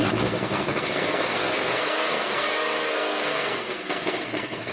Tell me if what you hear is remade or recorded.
remade